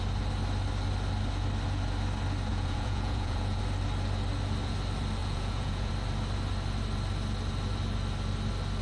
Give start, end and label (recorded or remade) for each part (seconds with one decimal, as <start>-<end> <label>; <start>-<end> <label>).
0.0-2.5 recorded; 2.5-3.6 remade; 3.6-5.2 recorded; 5.2-5.9 remade; 5.9-8.8 recorded